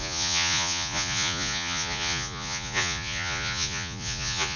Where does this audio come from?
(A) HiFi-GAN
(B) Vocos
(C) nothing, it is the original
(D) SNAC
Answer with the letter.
B